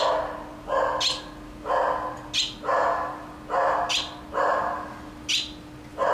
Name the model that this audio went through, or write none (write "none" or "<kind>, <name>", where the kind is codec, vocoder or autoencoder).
none